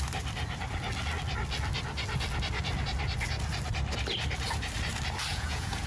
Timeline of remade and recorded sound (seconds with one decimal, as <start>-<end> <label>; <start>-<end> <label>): 0.0-5.3 recorded; 5.3-5.9 remade